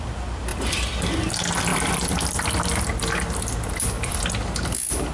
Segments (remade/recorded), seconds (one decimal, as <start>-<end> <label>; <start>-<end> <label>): 0.0-0.5 recorded; 0.5-1.2 remade; 1.2-1.7 recorded; 1.7-4.2 remade; 4.2-5.1 recorded